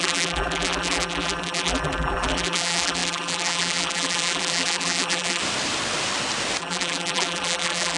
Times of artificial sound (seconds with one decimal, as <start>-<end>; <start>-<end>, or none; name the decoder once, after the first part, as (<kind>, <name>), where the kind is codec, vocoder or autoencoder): 0.0-5.4 (vocoder, BigVGAN v2); 6.6-8.0